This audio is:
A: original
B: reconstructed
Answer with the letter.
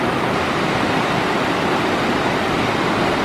A